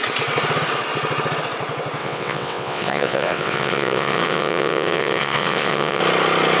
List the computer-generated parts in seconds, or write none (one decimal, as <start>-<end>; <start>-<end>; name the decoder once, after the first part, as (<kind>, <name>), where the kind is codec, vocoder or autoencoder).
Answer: 2.0-6.0 (vocoder, WaveNeXt)